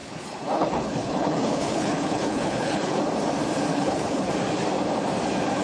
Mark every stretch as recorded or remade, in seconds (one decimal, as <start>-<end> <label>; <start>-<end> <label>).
0.0-3.0 remade; 3.0-3.7 recorded; 3.7-4.3 remade; 4.3-5.6 recorded